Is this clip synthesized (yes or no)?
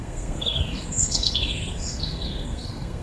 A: yes